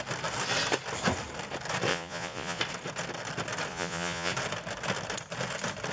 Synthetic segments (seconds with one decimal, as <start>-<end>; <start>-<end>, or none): 1.9-2.6; 3.7-4.3